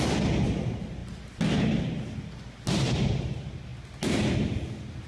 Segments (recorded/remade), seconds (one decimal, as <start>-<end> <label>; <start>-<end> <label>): 0.0-5.1 recorded